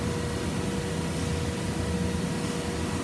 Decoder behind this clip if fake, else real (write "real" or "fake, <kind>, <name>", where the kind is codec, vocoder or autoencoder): real